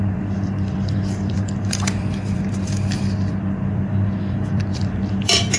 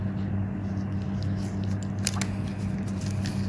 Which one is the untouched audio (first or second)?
second